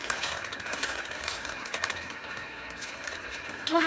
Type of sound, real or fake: fake